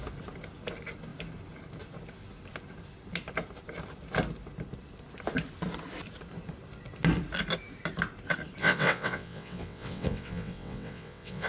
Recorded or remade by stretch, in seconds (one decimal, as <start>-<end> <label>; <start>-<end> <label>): 0.0-8.6 recorded; 8.6-11.5 remade